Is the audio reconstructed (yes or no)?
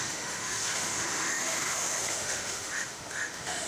yes